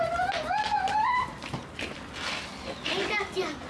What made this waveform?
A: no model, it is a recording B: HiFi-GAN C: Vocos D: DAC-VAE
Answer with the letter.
A